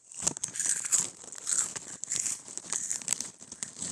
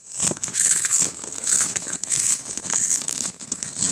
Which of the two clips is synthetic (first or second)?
second